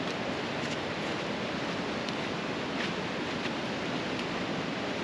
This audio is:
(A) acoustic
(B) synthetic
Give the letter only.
A